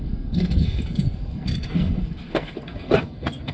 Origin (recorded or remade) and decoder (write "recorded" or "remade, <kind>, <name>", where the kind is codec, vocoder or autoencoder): remade, codec, SNAC